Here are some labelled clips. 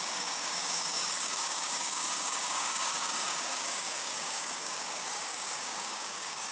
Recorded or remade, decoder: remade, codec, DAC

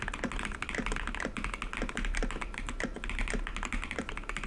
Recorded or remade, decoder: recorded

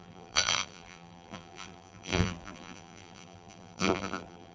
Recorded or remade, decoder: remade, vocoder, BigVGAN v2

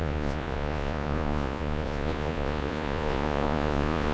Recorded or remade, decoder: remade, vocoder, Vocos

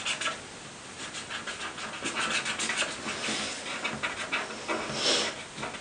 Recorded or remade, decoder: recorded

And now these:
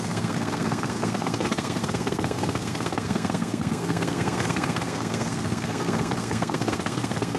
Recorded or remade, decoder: remade, codec, SNAC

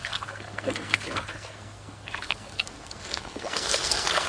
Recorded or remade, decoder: remade, codec, SNAC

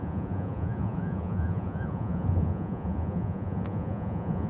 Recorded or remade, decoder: remade, vocoder, Vocos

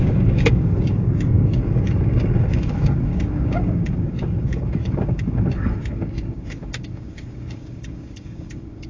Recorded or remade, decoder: remade, codec, DAC